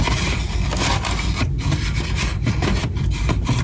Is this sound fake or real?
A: fake